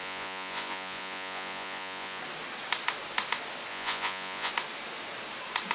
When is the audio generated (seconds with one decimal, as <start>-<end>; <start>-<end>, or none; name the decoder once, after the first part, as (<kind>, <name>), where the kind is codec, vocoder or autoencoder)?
0.0-2.2 (vocoder, Vocos); 3.7-4.5